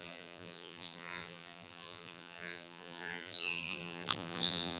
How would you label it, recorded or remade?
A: remade